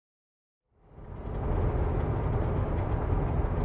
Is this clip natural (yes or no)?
yes